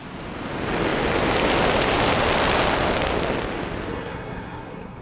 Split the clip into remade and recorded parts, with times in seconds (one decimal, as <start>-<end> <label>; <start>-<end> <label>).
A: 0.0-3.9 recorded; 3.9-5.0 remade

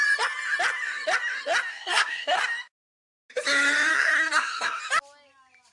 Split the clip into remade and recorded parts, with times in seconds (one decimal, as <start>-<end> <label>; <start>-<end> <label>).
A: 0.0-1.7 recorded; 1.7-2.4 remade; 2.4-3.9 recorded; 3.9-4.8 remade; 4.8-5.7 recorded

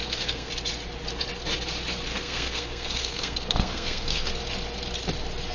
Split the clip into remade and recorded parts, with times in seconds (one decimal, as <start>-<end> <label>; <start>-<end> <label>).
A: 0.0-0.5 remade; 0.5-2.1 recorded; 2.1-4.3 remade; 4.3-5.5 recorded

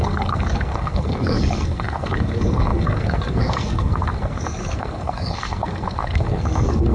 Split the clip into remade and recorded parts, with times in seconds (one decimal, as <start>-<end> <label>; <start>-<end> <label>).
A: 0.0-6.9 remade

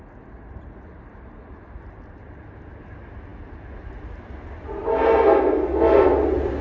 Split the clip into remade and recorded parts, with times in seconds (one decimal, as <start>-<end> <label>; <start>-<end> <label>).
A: 0.0-4.9 recorded; 4.9-6.1 remade; 6.1-6.6 recorded

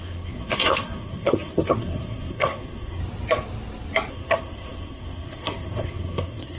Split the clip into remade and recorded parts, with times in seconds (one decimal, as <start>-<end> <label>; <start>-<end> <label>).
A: 0.0-3.0 remade; 3.0-4.1 recorded; 4.1-6.6 remade

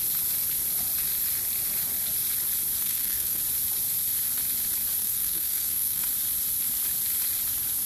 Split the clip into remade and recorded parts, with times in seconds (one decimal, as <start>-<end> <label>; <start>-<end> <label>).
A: 0.0-2.8 recorded; 2.8-3.4 remade; 3.4-5.0 recorded; 5.0-6.0 remade; 6.0-7.9 recorded